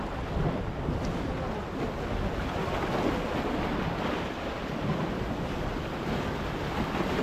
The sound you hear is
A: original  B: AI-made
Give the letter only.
A